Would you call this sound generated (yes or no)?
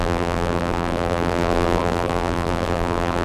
yes